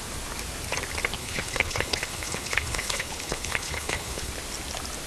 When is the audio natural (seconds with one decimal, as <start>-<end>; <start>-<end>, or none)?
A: 0.0-1.2; 4.3-5.1

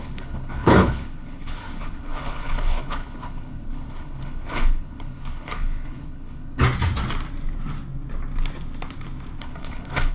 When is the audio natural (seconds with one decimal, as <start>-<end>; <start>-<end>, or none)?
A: 6.6-9.4

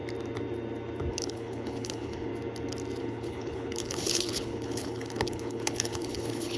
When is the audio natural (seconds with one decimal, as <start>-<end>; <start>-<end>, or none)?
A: 0.0-1.1; 2.3-3.0